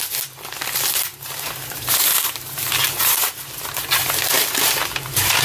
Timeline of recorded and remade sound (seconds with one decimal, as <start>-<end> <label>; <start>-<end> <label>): 0.0-1.1 recorded; 1.1-4.3 remade; 4.3-5.4 recorded